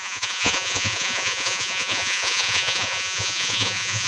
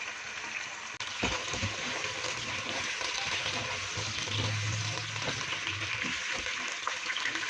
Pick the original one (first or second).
second